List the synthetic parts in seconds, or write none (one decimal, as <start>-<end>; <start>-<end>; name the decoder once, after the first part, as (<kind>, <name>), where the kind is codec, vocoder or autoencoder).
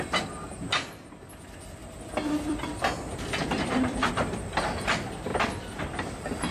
1.8-4.1 (vocoder, BigVGAN v2); 5.3-6.5